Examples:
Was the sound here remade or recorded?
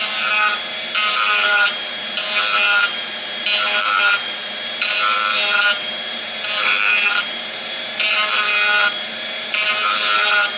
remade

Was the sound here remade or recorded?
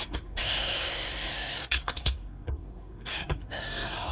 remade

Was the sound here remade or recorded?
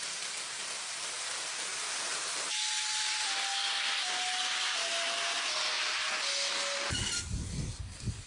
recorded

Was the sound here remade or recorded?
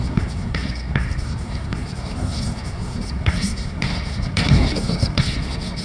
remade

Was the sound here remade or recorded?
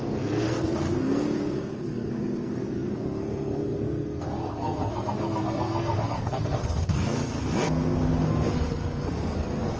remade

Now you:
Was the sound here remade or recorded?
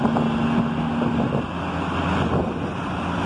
recorded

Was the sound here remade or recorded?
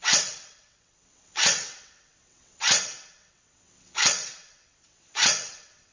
remade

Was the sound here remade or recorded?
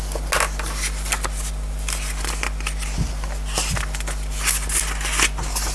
recorded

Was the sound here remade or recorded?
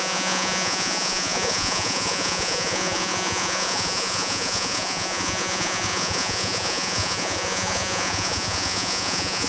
remade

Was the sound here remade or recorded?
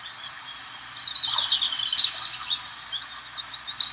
recorded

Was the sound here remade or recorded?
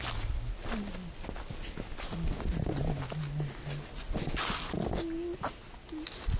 recorded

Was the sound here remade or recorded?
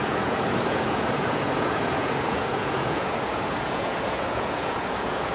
remade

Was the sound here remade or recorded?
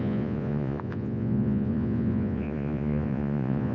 remade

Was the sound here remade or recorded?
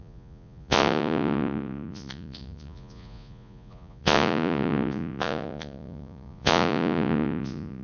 remade